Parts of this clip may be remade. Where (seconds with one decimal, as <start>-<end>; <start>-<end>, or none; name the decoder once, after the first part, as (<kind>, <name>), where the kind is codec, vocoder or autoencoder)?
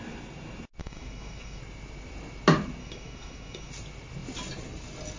0.8-1.6 (autoencoder, DAC-VAE); 2.8-3.7